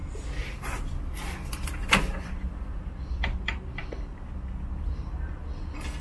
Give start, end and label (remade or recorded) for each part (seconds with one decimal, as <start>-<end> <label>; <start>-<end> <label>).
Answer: 0.0-6.0 recorded